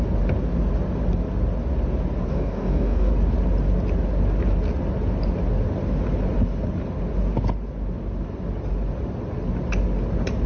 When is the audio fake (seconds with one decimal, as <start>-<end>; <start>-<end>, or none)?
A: 2.3-3.1